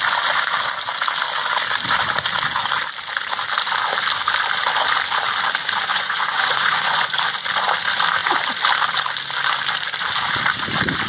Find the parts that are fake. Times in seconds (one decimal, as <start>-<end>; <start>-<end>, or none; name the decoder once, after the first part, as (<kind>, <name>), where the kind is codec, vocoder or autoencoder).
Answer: 5.9-7.1 (vocoder, Vocos)